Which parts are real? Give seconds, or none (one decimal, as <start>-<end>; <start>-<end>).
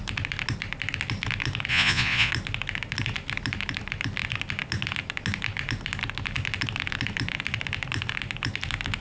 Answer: 0.0-1.7; 2.3-9.0